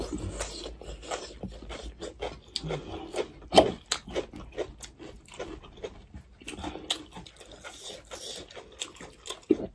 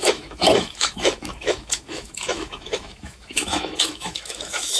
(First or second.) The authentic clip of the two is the first